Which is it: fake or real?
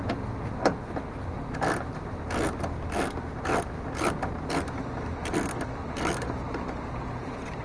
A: real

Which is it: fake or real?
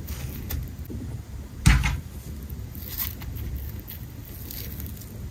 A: real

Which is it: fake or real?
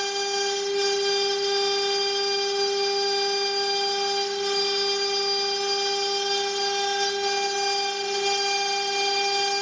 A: real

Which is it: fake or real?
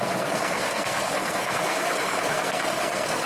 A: fake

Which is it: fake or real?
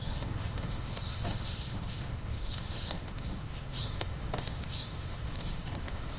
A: fake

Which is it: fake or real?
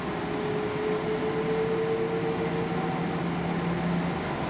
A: real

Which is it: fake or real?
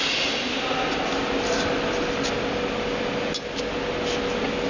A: real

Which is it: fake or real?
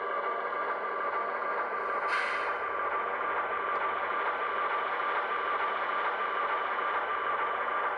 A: real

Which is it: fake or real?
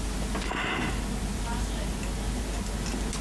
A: real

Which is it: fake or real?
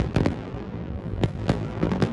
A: fake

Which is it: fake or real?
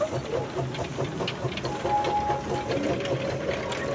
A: real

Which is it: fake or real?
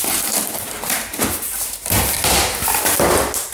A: real